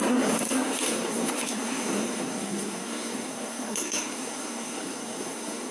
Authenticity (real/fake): fake